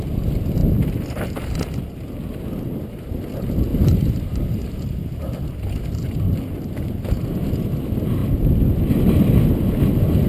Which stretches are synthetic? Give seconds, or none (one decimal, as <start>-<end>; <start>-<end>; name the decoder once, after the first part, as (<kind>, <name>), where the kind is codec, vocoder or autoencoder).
0.6-1.7 (vocoder, BigVGAN v2)